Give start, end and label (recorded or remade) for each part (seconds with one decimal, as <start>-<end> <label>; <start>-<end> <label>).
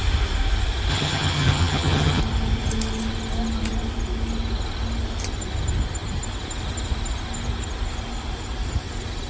0.0-0.9 recorded; 0.9-2.2 remade; 2.2-9.3 recorded